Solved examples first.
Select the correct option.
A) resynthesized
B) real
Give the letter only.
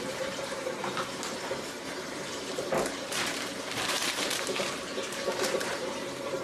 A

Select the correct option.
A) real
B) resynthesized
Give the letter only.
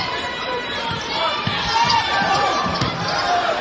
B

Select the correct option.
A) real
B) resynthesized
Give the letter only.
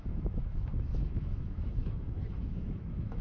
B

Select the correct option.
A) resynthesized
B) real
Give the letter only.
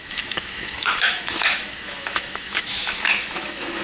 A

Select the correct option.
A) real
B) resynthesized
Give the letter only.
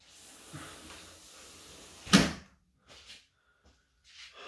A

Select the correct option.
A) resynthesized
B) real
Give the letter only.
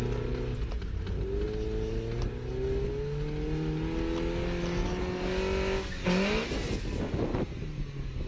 B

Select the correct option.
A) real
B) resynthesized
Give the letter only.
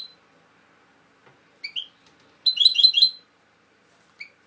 A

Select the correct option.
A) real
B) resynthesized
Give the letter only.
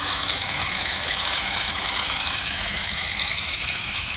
B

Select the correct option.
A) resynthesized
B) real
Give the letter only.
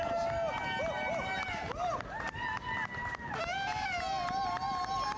B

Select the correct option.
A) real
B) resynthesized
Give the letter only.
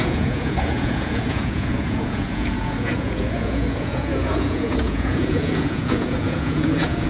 B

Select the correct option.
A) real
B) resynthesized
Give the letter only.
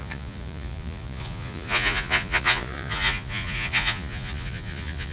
B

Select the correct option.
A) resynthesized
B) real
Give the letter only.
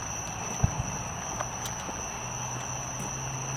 B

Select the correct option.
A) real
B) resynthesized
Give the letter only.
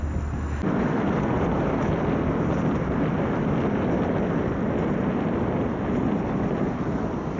A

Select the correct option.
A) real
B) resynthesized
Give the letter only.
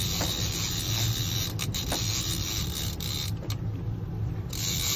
A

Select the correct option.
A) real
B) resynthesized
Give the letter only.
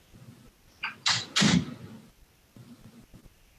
A